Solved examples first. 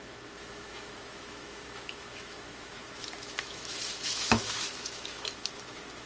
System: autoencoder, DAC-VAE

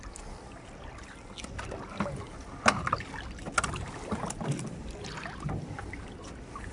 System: none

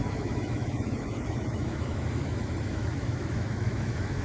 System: autoencoder, DAC-VAE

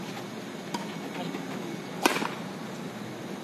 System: none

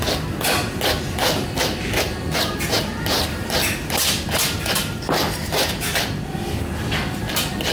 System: none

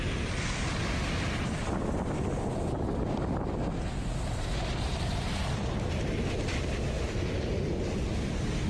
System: none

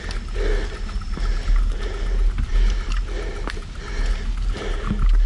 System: none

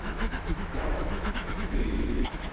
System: autoencoder, DAC-VAE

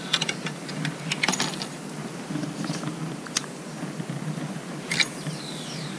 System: none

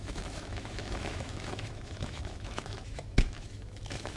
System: autoencoder, DAC-VAE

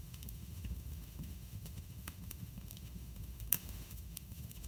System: autoencoder, DAC-VAE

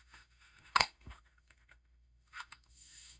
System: autoencoder, DAC-VAE